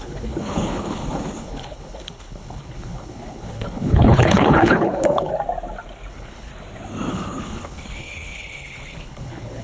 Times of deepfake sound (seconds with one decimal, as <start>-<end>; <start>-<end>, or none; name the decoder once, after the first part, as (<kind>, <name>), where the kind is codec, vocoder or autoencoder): 0.0-5.3 (codec, HILCodec); 6.1-6.5; 7.1-9.6